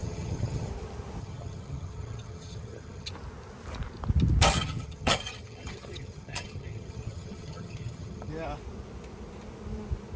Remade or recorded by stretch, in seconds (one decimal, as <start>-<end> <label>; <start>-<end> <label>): 0.0-0.7 remade; 0.7-1.2 recorded; 1.2-3.1 remade; 3.1-4.5 recorded; 4.5-8.3 remade; 8.3-10.2 recorded